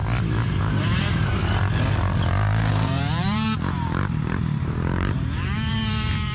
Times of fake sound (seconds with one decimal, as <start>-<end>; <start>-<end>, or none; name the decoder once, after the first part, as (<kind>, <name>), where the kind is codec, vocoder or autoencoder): 0.6-1.4 (vocoder, BigVGAN v2); 2.7-6.3